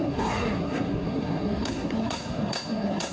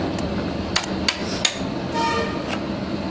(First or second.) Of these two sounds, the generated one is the first